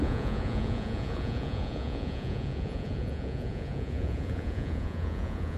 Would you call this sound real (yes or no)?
no